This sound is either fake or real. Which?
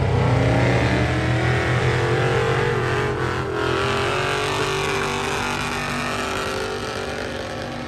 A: real